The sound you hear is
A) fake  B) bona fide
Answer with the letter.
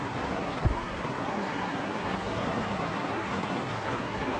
A